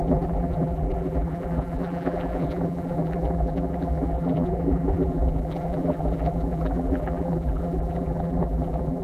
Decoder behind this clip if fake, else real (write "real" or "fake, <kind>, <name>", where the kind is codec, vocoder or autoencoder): fake, vocoder, BigVGAN v2